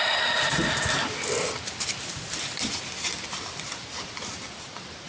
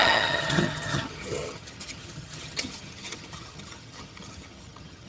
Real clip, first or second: first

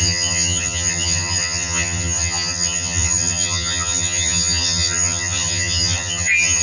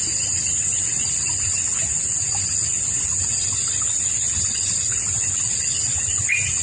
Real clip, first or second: second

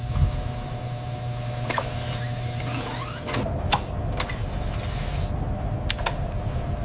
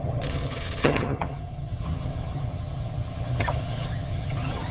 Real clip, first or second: first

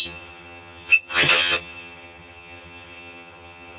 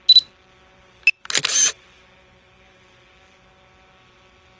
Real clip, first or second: second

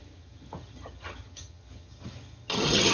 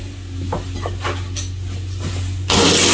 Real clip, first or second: second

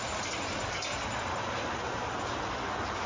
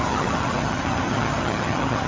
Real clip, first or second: first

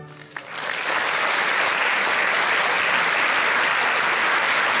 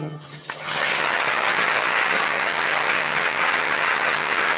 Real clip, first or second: first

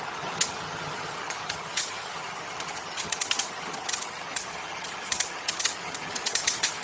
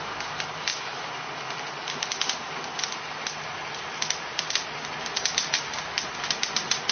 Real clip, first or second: second